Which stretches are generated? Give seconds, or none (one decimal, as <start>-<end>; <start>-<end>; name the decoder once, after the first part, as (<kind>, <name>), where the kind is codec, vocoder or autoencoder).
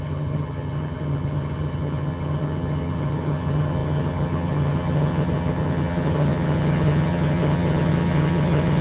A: 0.0-8.8 (vocoder, HiFi-GAN)